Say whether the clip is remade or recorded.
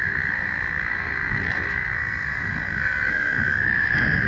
remade